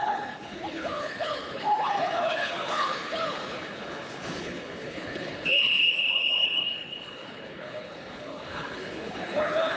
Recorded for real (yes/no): no